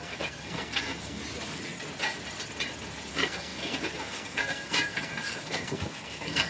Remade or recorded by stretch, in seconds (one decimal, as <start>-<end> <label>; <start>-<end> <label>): 0.0-1.2 remade; 1.2-3.1 recorded; 3.1-6.5 remade